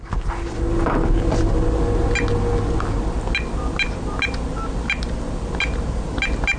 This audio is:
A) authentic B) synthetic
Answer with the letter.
A